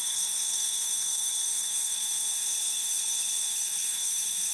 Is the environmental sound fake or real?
fake